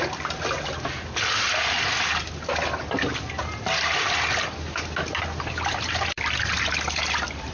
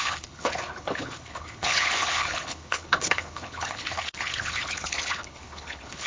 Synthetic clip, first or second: second